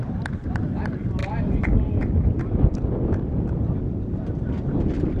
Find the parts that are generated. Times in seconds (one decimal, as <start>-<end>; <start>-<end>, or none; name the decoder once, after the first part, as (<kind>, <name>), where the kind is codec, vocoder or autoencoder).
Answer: none